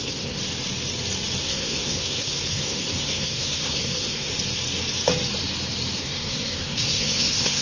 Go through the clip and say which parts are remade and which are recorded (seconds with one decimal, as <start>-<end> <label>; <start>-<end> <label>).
0.0-0.4 remade; 0.4-1.4 recorded; 1.4-4.3 remade; 4.3-6.0 recorded; 6.0-7.6 remade